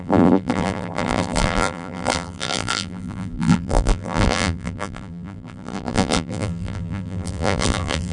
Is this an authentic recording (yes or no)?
no